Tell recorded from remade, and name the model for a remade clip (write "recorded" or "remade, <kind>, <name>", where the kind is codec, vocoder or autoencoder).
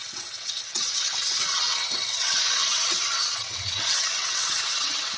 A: remade, vocoder, WaveNeXt